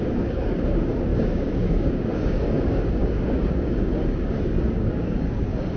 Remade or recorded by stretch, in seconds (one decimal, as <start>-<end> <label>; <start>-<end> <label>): 0.0-5.8 remade